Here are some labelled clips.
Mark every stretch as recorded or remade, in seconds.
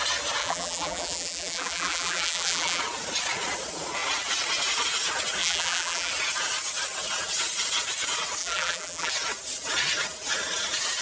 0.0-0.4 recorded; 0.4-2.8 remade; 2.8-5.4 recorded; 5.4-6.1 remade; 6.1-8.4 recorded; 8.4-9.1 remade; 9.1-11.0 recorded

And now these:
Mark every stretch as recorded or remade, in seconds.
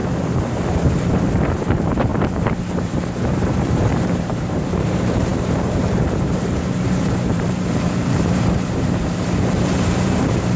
0.0-0.5 recorded; 0.5-10.6 remade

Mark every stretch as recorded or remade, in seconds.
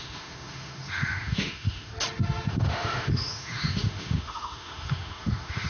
0.0-1.9 remade; 1.9-2.5 recorded; 2.5-5.7 remade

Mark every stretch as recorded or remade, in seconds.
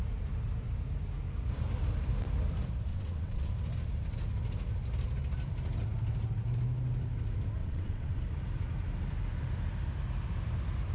0.0-2.9 recorded; 2.9-3.5 remade; 3.5-7.6 recorded; 7.6-8.2 remade; 8.2-10.9 recorded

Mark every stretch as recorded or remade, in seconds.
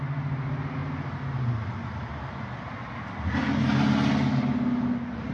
0.0-5.3 recorded